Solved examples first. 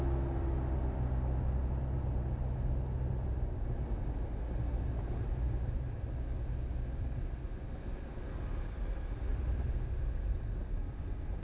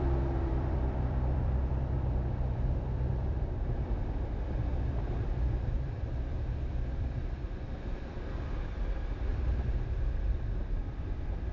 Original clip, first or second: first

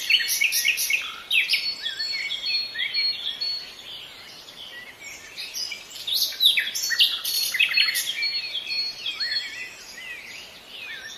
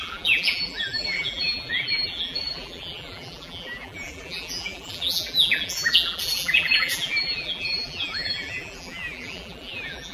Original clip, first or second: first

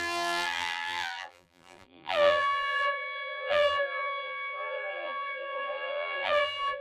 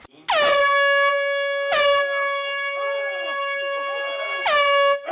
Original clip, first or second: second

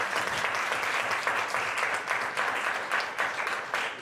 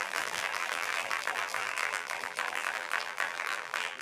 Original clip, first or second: first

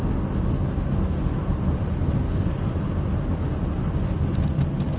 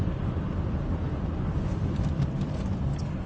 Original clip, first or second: first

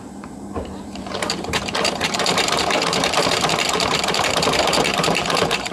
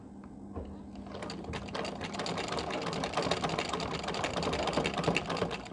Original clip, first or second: second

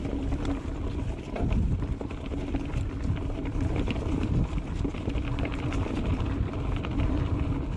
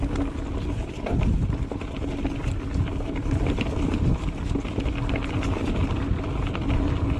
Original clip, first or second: second